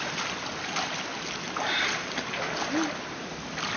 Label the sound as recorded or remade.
recorded